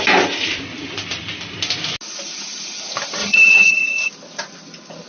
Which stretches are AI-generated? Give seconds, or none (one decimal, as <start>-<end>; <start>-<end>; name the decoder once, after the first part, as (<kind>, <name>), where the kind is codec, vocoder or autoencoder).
3.2-4.1 (vocoder, HiFi-GAN)